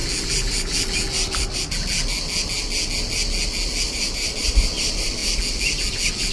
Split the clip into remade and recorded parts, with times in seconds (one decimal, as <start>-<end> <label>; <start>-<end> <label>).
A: 0.0-3.8 recorded; 3.8-5.2 remade; 5.2-6.3 recorded